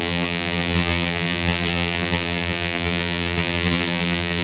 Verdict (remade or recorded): remade